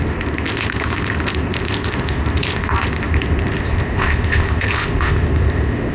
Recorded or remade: remade